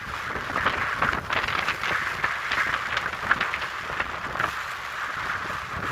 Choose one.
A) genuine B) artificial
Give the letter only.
A